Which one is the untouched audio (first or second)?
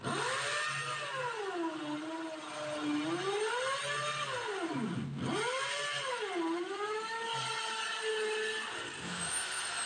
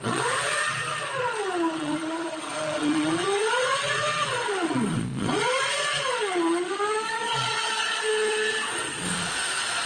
first